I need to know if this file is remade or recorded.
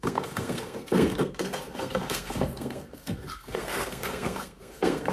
remade